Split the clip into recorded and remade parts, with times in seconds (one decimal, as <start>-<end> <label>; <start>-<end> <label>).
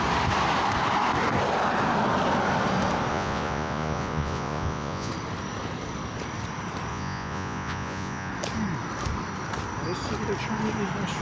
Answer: 0.0-3.1 recorded; 3.1-5.1 remade; 5.1-6.9 recorded; 6.9-8.3 remade; 8.3-11.2 recorded